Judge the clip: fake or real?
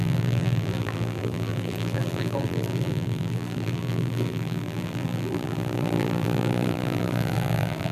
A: fake